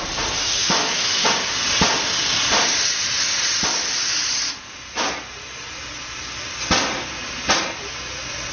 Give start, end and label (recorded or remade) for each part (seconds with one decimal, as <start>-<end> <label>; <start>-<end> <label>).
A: 0.0-0.4 recorded; 0.4-1.3 remade; 1.3-8.5 recorded